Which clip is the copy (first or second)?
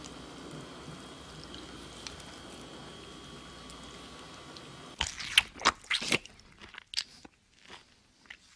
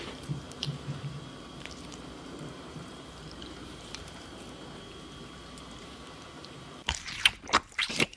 second